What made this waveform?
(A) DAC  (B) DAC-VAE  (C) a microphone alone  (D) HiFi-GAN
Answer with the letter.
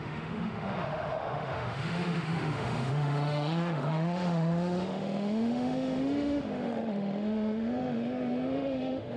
B